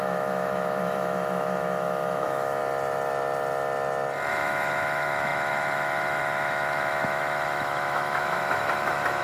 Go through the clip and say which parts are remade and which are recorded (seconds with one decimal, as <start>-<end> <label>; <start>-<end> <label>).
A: 0.0-2.6 remade; 2.6-4.3 recorded; 4.3-9.2 remade